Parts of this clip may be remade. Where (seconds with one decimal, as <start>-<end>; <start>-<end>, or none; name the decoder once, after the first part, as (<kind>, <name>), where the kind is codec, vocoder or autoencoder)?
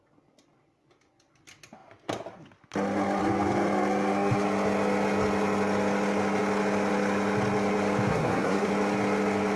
8.1-8.7 (codec, SNAC)